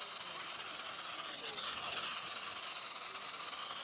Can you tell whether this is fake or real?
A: real